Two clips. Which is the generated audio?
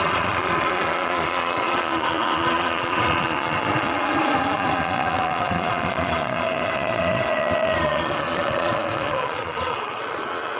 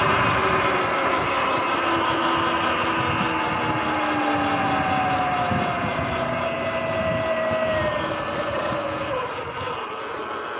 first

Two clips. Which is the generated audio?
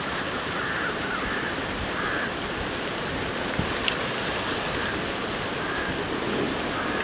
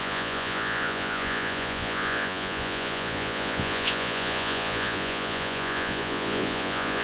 second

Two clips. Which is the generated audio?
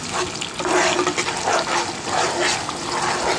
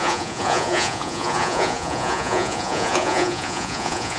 second